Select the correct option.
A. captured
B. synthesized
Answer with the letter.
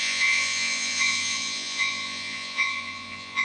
B